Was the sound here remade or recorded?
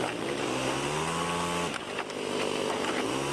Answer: recorded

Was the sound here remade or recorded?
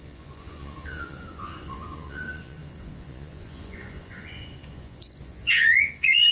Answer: remade